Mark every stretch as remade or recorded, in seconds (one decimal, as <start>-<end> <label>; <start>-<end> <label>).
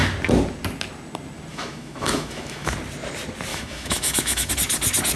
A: 0.0-1.5 recorded; 1.5-2.7 remade; 2.7-3.5 recorded; 3.5-4.5 remade; 4.5-5.2 recorded